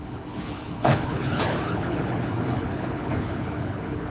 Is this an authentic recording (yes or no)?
no